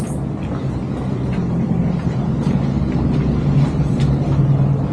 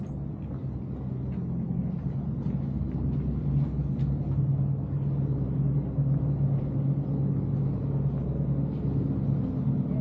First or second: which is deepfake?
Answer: first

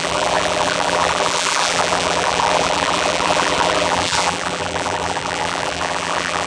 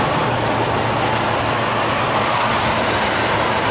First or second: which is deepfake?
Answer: first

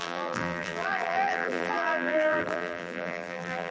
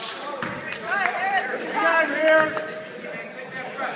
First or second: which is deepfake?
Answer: first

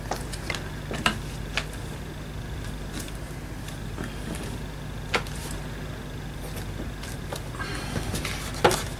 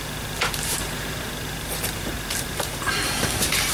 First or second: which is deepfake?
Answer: second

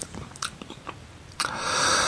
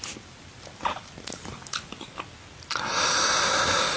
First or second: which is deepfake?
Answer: first